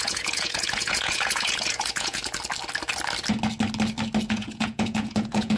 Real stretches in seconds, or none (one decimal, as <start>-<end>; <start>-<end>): 2.2-4.3